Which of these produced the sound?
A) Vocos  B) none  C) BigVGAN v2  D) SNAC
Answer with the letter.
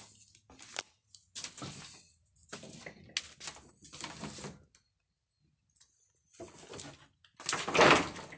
B